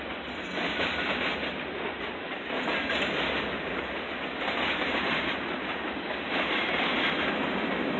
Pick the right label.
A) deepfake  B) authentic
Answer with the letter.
B